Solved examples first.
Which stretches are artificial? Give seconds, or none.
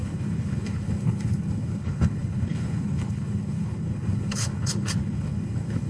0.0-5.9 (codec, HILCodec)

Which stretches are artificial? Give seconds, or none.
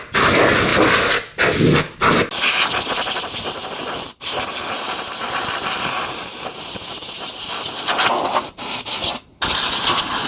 none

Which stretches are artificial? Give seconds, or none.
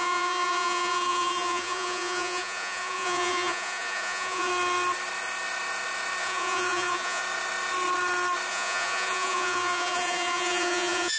0.0-4.5 (vocoder, Vocos); 6.2-7.2; 8.5-11.2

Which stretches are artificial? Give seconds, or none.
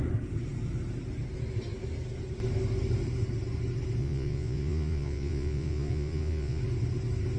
4.0-6.6 (vocoder, Vocos)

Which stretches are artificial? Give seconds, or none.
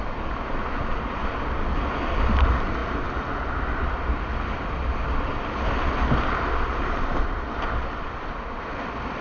none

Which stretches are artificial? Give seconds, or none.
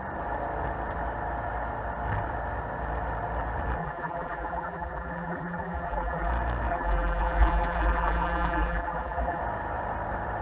3.8-6.3 (vocoder, BigVGAN v2); 6.7-9.4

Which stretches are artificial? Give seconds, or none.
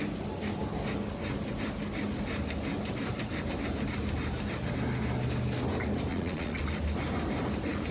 6.1-6.6 (vocoder, Vocos)